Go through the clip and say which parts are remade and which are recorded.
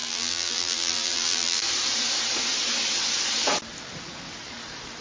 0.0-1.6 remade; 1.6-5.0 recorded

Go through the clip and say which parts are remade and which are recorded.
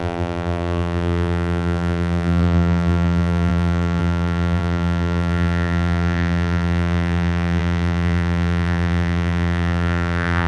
0.0-10.5 remade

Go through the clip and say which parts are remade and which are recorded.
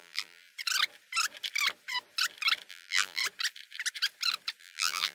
0.0-0.5 remade; 0.5-2.7 recorded; 2.7-3.2 remade; 3.2-4.6 recorded; 4.6-5.1 remade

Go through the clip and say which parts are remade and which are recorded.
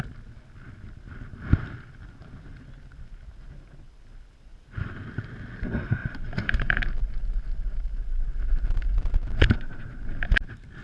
0.0-4.5 recorded; 4.5-5.2 remade; 5.2-6.0 recorded; 6.0-6.8 remade; 6.8-10.8 recorded